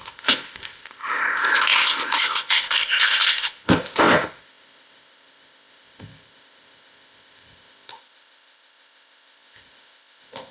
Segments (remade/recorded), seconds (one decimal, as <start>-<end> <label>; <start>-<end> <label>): 0.0-10.5 remade